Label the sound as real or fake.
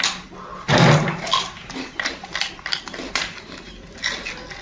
real